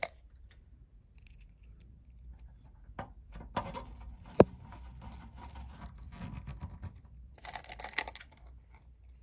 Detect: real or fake real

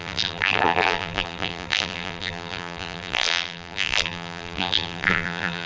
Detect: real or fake fake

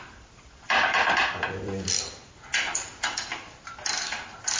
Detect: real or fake fake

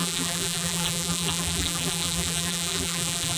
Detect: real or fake fake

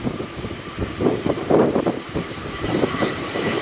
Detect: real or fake fake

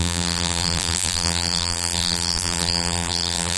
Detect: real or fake fake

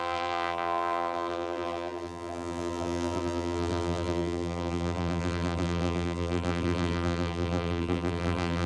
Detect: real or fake fake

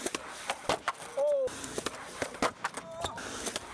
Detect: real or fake real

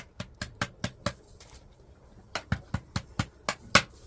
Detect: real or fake real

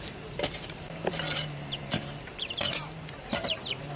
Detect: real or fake fake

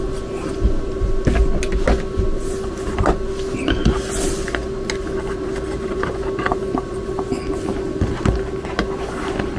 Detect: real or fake real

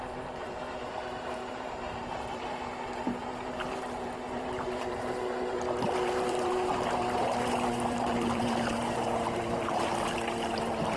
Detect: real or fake fake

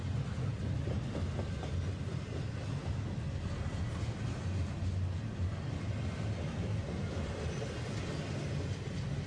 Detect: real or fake real